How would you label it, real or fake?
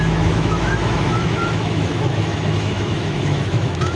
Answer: fake